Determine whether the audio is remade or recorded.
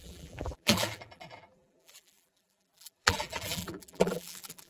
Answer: remade